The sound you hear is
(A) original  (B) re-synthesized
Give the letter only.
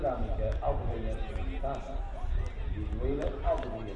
A